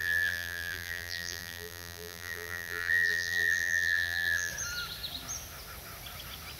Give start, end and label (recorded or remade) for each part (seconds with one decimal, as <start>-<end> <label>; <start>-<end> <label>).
0.0-4.5 remade; 4.5-6.6 recorded